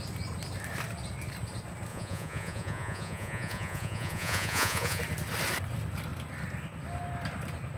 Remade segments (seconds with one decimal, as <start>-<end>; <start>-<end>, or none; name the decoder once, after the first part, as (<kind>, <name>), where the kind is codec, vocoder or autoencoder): 1.9-5.0 (vocoder, Vocos)

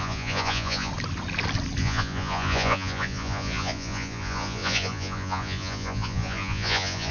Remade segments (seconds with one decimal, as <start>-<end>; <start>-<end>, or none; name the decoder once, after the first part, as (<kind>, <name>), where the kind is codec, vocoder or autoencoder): 0.0-0.9 (vocoder, Vocos); 1.8-7.1

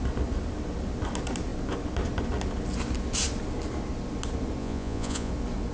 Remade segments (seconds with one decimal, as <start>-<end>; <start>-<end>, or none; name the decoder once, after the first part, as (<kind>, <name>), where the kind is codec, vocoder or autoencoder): 4.6-5.3 (vocoder, Vocos)

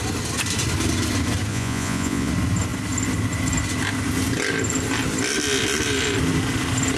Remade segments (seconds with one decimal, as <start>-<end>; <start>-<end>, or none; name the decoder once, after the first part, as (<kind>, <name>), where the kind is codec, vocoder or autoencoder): 1.5-2.3 (vocoder, Vocos)

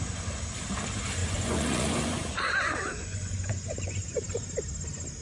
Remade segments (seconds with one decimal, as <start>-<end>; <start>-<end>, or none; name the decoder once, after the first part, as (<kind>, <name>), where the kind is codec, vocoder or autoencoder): 1.2-4.2 (vocoder, Vocos)

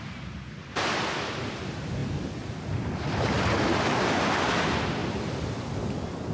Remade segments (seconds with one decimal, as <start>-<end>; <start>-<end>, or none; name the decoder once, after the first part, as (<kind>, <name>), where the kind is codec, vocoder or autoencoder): none